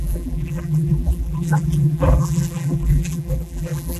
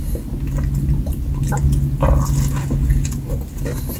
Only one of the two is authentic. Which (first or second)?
second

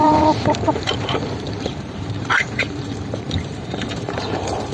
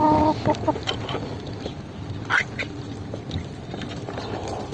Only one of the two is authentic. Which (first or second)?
second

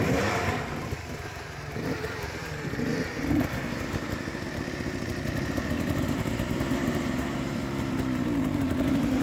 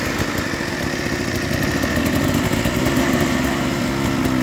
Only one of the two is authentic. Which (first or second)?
second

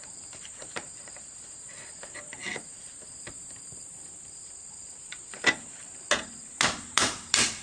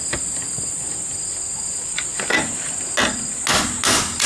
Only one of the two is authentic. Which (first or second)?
second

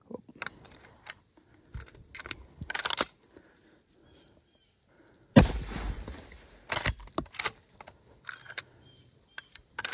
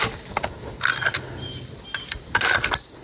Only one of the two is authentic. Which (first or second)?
second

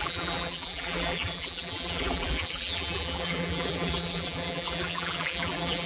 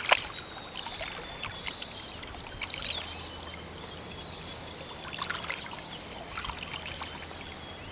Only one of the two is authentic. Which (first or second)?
second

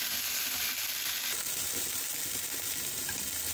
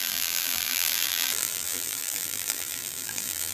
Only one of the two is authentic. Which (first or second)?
first